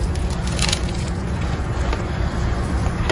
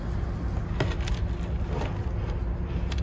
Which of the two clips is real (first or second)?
second